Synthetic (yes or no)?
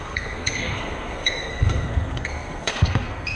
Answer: yes